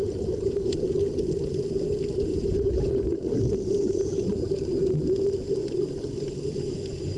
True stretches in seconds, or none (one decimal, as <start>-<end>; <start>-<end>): 0.9-2.3; 4.8-5.6